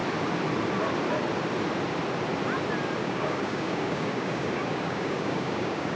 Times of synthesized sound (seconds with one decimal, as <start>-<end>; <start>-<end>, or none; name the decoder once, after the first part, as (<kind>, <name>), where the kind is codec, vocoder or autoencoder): 3.0-6.0 (codec, DAC)